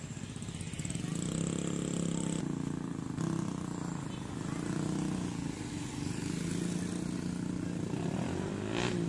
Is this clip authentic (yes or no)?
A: yes